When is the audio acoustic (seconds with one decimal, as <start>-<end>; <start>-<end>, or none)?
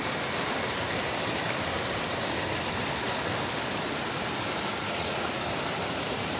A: 0.0-4.8; 5.4-6.4